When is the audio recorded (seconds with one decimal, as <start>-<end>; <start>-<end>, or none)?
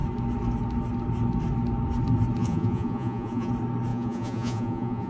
0.0-2.4; 3.5-3.9